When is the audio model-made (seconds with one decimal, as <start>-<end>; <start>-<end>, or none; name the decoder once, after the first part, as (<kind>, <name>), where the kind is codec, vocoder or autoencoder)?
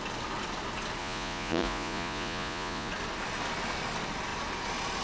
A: 1.0-2.9 (vocoder, Vocos)